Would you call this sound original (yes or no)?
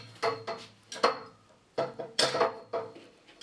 yes